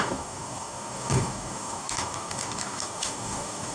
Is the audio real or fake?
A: fake